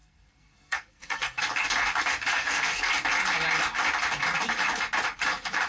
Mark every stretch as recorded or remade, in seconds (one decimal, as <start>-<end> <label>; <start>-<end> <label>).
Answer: 0.0-1.4 remade; 1.4-2.3 recorded; 2.3-2.9 remade; 2.9-5.7 recorded